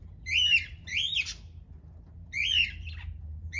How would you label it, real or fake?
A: real